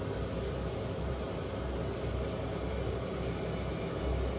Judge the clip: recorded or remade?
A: recorded